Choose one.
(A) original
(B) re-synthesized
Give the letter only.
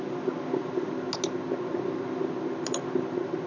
A